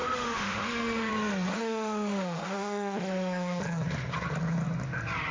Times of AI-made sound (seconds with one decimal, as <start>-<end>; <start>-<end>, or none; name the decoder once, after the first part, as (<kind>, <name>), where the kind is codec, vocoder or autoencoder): 0.0-1.1 (autoencoder, DAC-VAE); 1.5-3.6